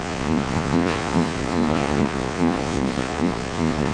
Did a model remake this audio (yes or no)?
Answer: yes